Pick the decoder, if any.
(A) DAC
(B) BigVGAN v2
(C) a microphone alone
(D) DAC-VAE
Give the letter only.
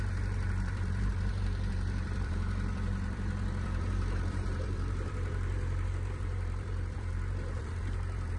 B